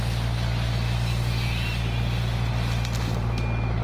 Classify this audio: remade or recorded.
recorded